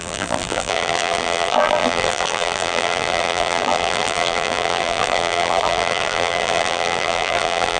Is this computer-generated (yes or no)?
yes